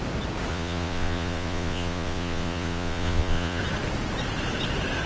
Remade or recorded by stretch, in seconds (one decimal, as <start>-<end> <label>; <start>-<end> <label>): 0.0-0.5 recorded; 0.5-3.6 remade; 3.6-5.1 recorded